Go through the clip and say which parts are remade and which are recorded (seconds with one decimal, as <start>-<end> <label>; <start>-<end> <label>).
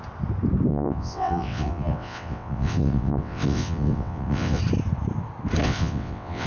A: 0.0-0.7 recorded; 0.7-4.6 remade; 4.6-5.6 recorded; 5.6-6.5 remade